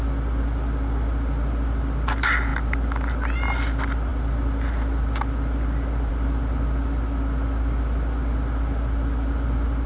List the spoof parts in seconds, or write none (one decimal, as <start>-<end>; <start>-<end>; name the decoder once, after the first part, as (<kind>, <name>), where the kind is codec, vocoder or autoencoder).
none